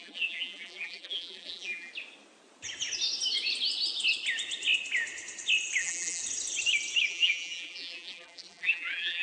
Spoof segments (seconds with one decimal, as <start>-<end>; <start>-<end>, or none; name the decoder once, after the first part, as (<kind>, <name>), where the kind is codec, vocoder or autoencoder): 0.0-1.9 (vocoder, BigVGAN v2); 5.8-6.2; 7.1-9.2

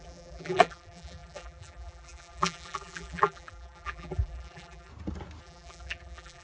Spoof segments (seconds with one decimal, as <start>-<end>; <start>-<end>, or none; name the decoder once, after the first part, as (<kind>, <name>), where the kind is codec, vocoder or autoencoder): 0.0-4.9 (vocoder, BigVGAN v2); 5.4-6.4

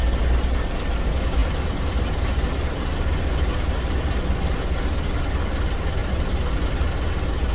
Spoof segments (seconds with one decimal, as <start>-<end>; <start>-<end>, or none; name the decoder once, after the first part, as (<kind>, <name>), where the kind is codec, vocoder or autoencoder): 1.4-4.2 (vocoder, BigVGAN v2); 6.0-6.7

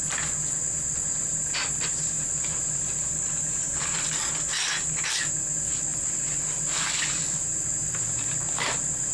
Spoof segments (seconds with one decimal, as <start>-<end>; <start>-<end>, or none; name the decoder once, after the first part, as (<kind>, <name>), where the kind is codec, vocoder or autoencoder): 1.9-4.2 (vocoder, BigVGAN v2); 5.9-8.4

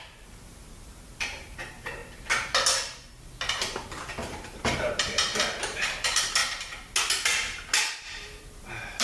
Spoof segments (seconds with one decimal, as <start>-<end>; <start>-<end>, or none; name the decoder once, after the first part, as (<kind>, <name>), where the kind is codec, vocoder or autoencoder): 0.0-2.0 (vocoder, BigVGAN v2); 3.5-6.4; 8.0-9.0